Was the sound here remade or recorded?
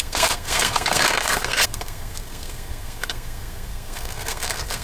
remade